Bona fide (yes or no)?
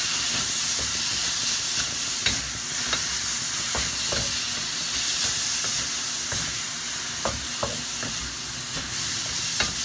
yes